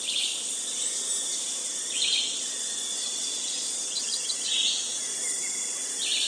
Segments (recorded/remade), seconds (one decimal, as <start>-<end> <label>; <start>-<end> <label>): 0.0-1.6 recorded; 1.6-5.4 remade; 5.4-6.3 recorded